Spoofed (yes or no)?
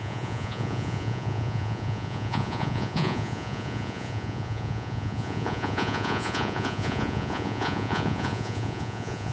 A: yes